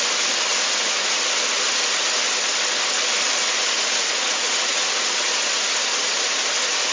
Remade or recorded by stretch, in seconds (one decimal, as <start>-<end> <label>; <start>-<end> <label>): 0.0-0.5 recorded; 0.5-1.2 remade; 1.2-3.4 recorded; 3.4-5.1 remade; 5.1-6.9 recorded